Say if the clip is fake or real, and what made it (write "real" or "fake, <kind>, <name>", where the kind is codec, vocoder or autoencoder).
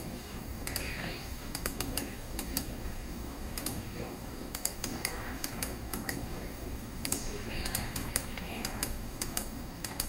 fake, codec, DAC